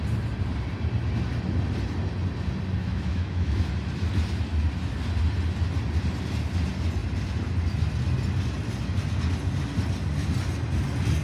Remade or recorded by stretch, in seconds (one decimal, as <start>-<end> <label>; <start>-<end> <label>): 0.0-2.8 recorded; 2.8-3.7 remade; 3.7-11.2 recorded